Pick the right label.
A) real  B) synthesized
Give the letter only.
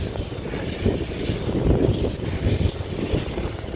A